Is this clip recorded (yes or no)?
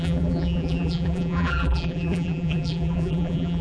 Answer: no